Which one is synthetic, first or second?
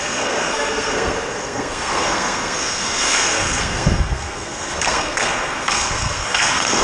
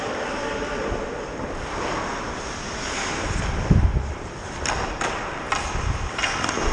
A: first